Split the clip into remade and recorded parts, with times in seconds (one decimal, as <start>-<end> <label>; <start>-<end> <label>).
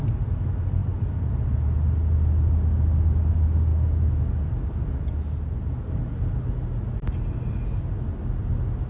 0.0-0.8 recorded; 0.8-1.3 remade; 1.3-8.9 recorded